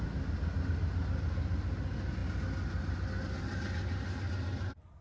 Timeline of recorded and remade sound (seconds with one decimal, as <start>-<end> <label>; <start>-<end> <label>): 0.0-5.0 recorded